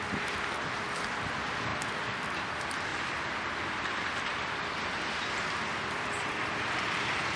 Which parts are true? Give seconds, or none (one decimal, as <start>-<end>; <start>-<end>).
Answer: 0.0-7.4